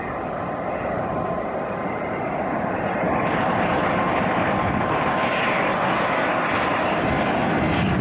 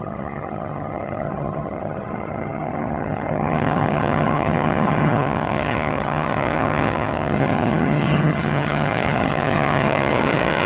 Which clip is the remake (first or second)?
second